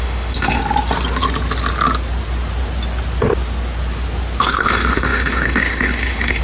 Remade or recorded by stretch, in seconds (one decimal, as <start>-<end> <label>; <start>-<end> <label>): 0.0-0.6 remade; 0.6-4.4 recorded; 4.4-6.4 remade